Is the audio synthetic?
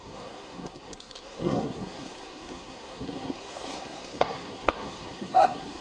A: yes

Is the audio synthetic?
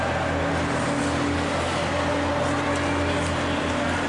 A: no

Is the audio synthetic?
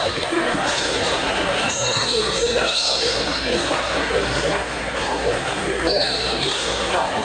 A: yes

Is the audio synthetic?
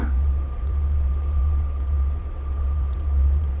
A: yes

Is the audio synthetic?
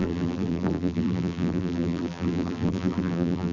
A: yes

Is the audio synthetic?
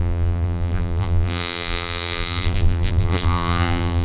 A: yes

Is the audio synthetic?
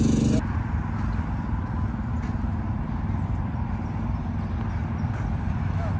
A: no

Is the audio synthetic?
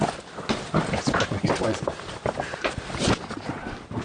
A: no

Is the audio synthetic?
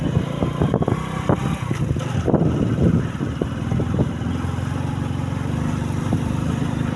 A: no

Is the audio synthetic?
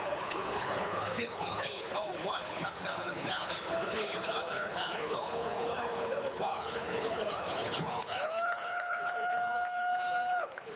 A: yes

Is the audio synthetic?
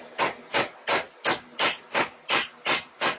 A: no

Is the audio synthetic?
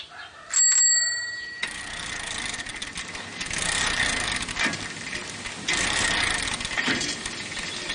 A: no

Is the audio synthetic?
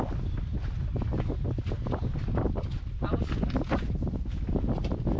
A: no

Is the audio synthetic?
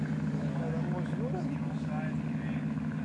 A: no